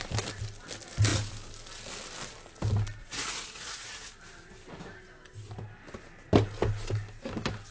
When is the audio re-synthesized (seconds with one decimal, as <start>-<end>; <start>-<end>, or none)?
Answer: 3.0-4.1